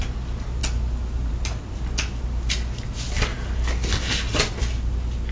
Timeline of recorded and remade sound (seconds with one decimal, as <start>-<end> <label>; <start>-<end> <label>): 0.0-5.3 recorded